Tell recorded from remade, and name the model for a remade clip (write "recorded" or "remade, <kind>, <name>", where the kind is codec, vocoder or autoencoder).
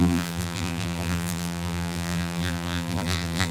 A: remade, vocoder, BigVGAN v2